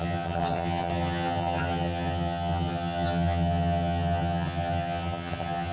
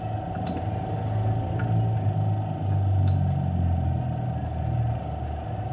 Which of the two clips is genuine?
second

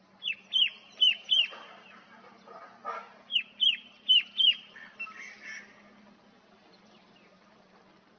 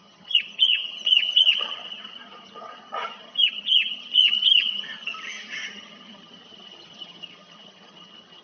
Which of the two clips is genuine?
first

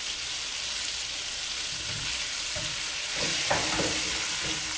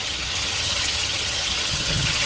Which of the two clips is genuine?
first